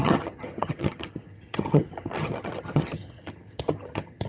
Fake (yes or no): yes